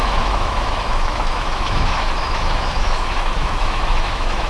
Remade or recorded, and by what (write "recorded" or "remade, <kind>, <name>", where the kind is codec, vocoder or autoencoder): remade, autoencoder, DAC-VAE